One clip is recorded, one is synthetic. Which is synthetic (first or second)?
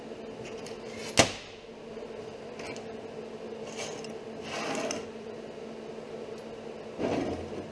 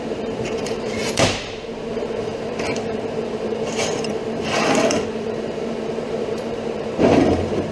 second